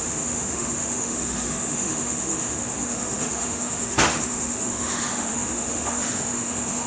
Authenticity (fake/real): fake